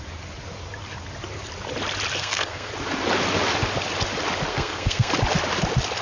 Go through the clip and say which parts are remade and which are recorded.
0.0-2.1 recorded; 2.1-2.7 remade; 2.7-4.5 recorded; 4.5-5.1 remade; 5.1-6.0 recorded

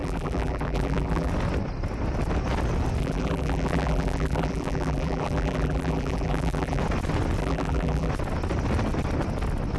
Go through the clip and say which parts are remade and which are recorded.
0.0-1.3 remade; 1.3-3.0 recorded; 3.0-6.8 remade; 6.8-7.4 recorded; 7.4-8.1 remade; 8.1-9.8 recorded

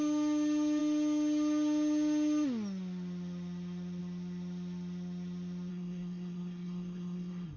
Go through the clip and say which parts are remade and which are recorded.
0.0-5.7 recorded; 5.7-7.6 remade

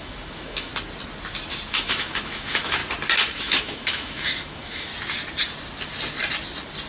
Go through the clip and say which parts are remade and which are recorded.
0.0-0.7 remade; 0.7-1.7 recorded; 1.7-2.8 remade; 2.8-3.4 recorded; 3.4-4.9 remade; 4.9-6.9 recorded